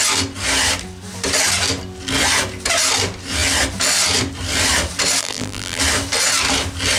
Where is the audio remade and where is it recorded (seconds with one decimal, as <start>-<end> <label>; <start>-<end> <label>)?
0.0-5.2 recorded; 5.2-5.8 remade; 5.8-7.0 recorded